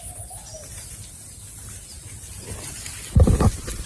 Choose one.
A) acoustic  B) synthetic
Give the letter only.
A